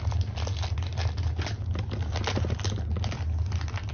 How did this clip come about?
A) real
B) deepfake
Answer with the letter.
A